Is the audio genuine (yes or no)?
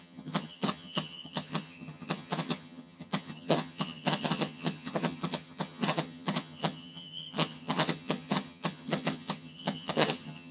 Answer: no